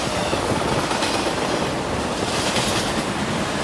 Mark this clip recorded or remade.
recorded